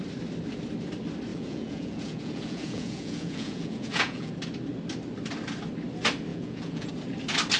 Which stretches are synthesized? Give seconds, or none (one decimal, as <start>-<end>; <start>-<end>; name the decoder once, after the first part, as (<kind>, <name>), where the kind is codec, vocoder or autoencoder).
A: 1.3-4.3 (vocoder, Vocos); 6.3-6.9